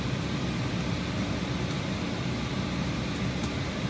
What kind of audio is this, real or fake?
real